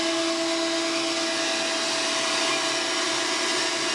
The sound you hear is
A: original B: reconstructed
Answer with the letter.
A